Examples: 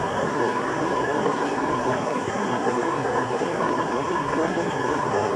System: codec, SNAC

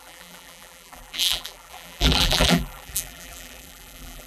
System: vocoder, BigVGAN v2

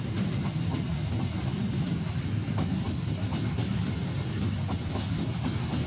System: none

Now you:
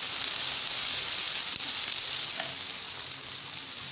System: none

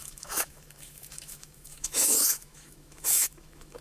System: autoencoder, DAC-VAE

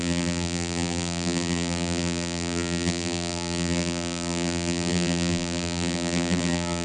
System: vocoder, BigVGAN v2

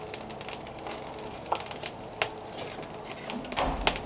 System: none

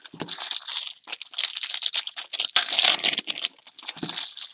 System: none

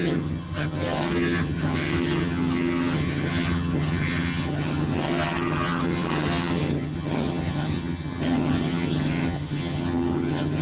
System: vocoder, HiFi-GAN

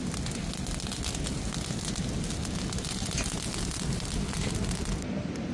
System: none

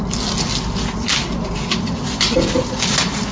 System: none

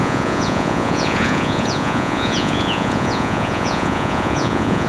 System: vocoder, Vocos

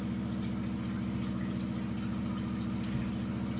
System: none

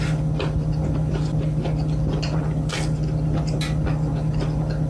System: none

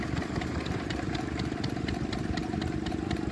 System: vocoder, BigVGAN v2